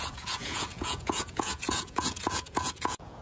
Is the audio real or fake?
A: fake